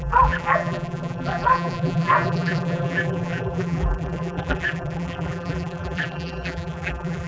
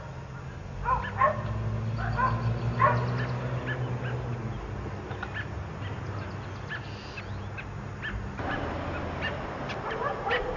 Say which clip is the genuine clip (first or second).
second